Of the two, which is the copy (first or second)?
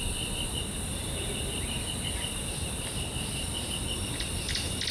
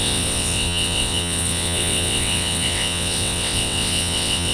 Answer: second